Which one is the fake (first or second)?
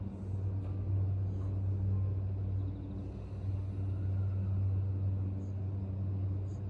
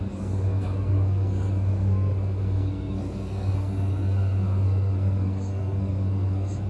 second